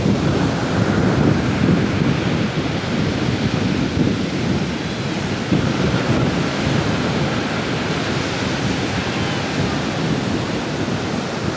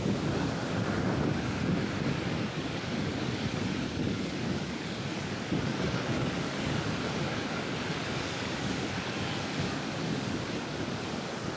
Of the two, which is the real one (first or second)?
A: first